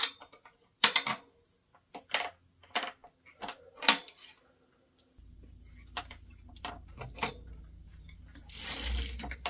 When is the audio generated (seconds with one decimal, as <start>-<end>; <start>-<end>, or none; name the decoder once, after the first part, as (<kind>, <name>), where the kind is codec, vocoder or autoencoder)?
none